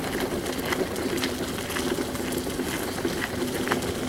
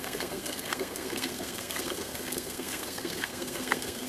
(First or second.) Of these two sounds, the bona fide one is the first